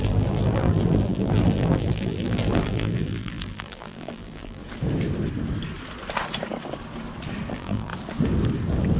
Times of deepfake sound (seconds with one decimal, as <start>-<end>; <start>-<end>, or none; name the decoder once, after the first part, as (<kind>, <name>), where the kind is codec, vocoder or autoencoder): 0.0-4.6 (vocoder, BigVGAN v2); 7.5-7.9